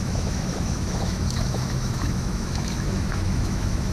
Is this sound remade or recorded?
remade